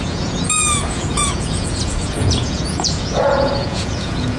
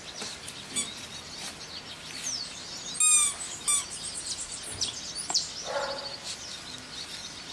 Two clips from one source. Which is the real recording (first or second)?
second